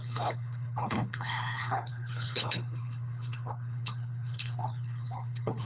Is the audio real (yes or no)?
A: no